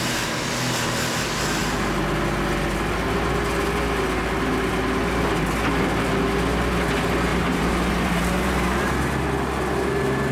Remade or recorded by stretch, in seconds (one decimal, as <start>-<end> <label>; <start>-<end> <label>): 0.0-7.3 recorded; 7.3-8.9 remade; 8.9-10.3 recorded